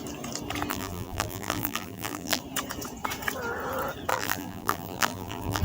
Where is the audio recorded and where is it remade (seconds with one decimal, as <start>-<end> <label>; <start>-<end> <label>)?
0.0-0.7 recorded; 0.7-2.4 remade; 2.4-4.1 recorded; 4.1-5.6 remade